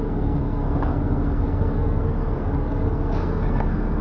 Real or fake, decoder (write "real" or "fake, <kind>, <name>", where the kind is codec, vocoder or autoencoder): fake, codec, SNAC